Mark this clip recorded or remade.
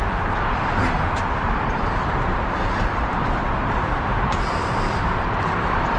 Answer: remade